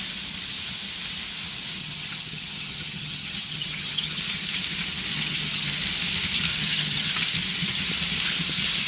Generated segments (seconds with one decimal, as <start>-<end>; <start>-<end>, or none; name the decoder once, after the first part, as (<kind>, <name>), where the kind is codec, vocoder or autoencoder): 1.8-4.2 (vocoder, HiFi-GAN); 5.1-5.8; 6.5-7.1